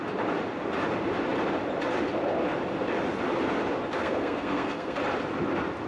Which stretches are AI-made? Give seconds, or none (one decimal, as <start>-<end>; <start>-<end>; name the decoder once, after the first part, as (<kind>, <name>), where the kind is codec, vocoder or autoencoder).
3.9-5.0 (codec, SNAC)

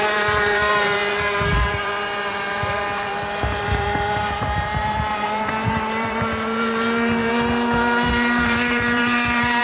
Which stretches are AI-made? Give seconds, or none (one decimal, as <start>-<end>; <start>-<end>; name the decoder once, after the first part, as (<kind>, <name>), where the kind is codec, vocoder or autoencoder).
0.0-9.6 (vocoder, BigVGAN v2)

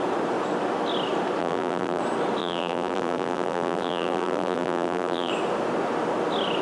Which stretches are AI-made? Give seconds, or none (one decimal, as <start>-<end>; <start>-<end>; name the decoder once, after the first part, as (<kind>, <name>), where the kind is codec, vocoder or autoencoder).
1.4-2.0 (vocoder, BigVGAN v2); 2.4-5.3

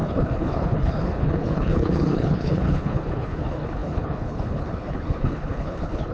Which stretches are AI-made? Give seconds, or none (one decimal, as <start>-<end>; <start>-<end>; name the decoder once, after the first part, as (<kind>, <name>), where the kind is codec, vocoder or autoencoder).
0.0-6.1 (codec, HILCodec)

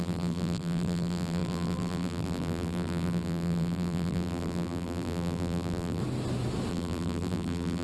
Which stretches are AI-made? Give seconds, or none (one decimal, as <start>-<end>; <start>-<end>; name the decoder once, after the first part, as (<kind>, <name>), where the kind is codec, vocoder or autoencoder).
0.0-6.0 (vocoder, BigVGAN v2); 6.7-7.8

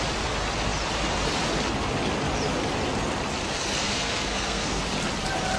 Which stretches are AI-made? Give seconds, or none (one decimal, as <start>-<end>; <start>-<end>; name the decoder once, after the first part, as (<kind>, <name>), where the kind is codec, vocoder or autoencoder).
3.8-4.8 (codec, SNAC)

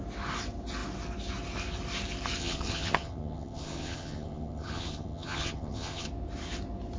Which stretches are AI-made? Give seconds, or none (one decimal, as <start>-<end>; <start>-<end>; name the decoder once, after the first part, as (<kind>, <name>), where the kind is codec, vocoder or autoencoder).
2.4-6.1 (vocoder, HiFi-GAN)

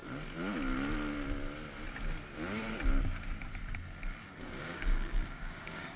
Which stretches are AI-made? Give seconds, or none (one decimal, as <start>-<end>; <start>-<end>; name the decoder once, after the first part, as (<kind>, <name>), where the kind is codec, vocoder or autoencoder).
4.4-6.0 (codec, DAC)